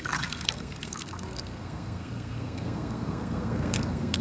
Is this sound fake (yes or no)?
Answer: yes